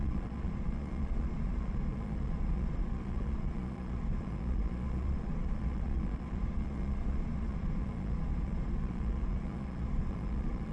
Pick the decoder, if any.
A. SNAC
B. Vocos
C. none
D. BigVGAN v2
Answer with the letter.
B